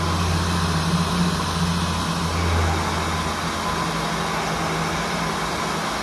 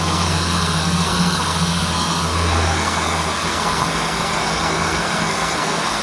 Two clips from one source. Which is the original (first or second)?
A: first